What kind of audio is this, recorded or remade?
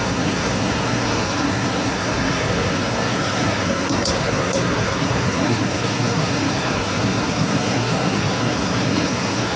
remade